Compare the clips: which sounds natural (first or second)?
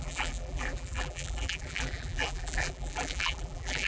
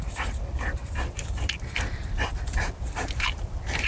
second